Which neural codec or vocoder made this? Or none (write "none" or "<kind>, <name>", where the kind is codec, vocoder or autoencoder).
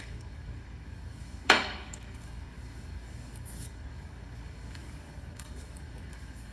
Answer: codec, DAC